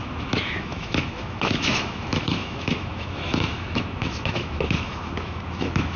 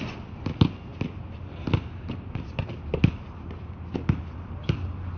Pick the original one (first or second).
second